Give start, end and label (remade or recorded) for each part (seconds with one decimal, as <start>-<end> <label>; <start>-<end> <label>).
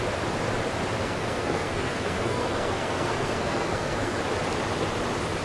0.0-1.0 recorded; 1.0-4.2 remade; 4.2-5.4 recorded